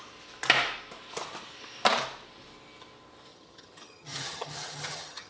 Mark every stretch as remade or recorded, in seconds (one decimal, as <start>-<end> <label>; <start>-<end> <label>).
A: 0.0-3.3 recorded; 3.3-5.3 remade